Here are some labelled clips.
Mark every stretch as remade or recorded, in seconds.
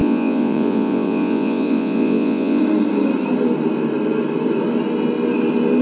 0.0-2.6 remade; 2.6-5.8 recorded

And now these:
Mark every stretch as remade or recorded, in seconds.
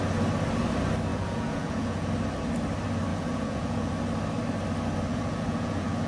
0.0-1.1 recorded; 1.1-2.1 remade; 2.1-3.1 recorded; 3.1-3.9 remade; 3.9-5.1 recorded; 5.1-6.1 remade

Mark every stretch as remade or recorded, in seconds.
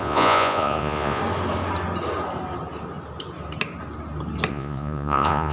0.0-1.2 remade; 1.2-4.5 recorded; 4.5-5.5 remade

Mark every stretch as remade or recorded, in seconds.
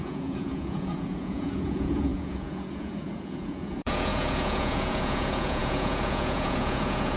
0.0-7.2 remade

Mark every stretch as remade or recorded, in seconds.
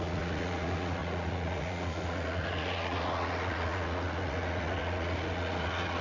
0.0-6.0 remade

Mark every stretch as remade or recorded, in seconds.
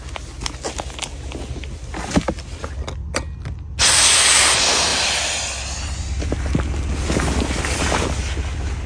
0.0-8.9 recorded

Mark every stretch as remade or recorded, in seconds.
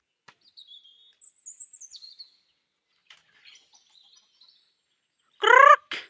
0.0-6.1 recorded